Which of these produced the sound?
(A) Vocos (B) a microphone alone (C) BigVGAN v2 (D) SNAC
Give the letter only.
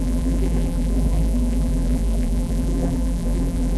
C